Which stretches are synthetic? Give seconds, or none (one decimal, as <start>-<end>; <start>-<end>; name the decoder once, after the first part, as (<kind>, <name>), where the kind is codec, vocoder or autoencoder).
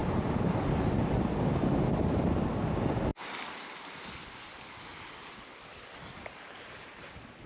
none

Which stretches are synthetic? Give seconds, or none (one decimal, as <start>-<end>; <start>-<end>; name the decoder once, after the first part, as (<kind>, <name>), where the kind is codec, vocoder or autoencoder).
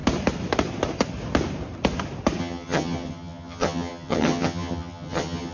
2.4-5.5 (vocoder, HiFi-GAN)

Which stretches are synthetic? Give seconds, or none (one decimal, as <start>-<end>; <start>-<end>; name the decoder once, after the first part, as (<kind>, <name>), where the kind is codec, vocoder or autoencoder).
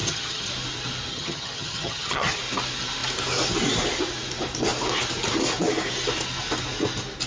0.0-0.5 (vocoder, HiFi-GAN); 1.1-2.4